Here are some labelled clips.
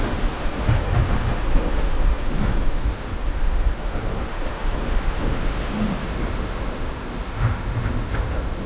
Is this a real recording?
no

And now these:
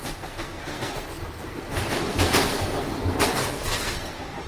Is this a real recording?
no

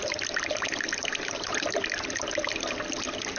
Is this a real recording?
yes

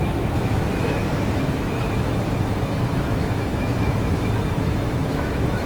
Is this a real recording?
no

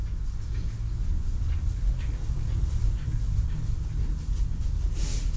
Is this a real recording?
yes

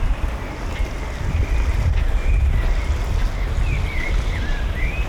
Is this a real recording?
yes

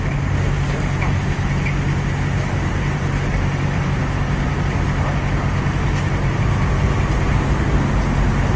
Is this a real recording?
yes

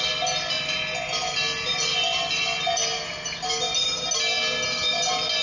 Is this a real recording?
yes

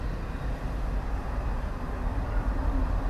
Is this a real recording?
yes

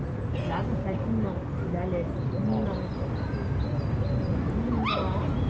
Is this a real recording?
yes